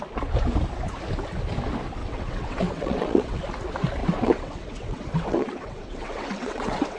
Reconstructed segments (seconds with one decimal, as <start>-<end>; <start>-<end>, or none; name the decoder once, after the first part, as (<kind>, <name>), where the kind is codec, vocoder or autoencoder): 2.0-3.4 (vocoder, WaveNeXt); 4.0-7.0